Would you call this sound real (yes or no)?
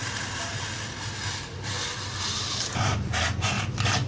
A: yes